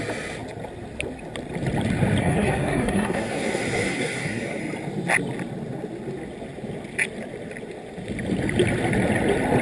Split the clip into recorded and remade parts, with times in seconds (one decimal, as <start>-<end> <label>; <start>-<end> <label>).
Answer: 0.0-2.2 recorded; 2.2-4.6 remade; 4.6-9.6 recorded